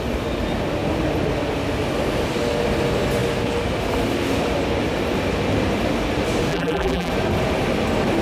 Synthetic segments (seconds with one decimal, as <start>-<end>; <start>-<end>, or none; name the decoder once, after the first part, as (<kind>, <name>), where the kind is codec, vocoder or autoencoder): 6.5-7.1 (vocoder, BigVGAN v2)